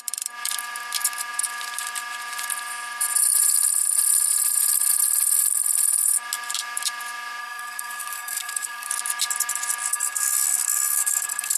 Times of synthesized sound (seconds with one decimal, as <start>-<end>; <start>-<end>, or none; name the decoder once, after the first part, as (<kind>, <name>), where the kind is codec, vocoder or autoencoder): 7.4-8.9 (codec, SNAC); 9.9-11.6